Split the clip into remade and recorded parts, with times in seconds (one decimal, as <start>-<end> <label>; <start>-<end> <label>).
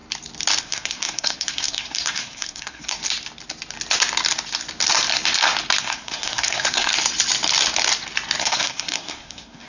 0.0-0.6 recorded; 0.6-3.0 remade; 3.0-5.8 recorded; 5.8-6.9 remade; 6.9-8.4 recorded; 8.4-9.7 remade